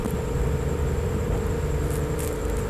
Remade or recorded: recorded